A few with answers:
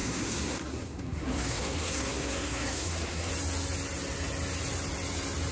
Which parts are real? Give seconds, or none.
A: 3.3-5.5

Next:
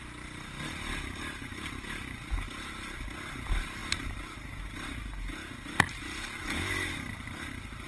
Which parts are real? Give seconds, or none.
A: 0.0-7.9

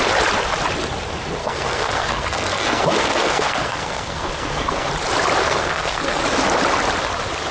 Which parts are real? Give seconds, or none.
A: 0.0-1.4; 4.9-5.4; 6.2-7.5

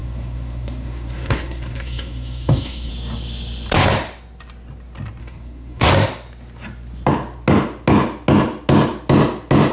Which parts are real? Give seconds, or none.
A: 2.9-5.2; 5.9-9.7

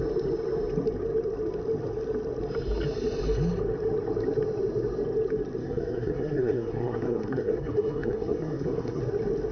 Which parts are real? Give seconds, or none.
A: 0.0-5.6; 9.0-9.5

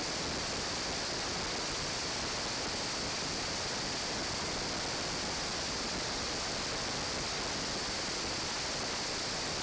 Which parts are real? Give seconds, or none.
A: 0.0-9.6